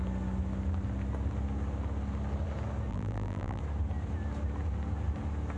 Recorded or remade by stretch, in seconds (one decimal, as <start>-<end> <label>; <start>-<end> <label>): 0.0-2.9 recorded; 2.9-3.6 remade; 3.6-5.6 recorded